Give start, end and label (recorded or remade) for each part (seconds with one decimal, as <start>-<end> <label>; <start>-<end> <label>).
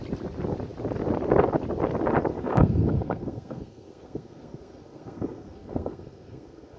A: 0.0-2.3 recorded; 2.3-6.8 remade